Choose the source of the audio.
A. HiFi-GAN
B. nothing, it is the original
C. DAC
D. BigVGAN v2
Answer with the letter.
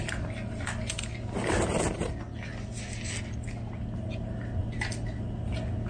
B